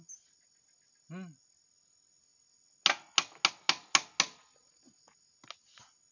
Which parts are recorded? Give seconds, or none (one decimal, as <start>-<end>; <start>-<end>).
0.0-6.1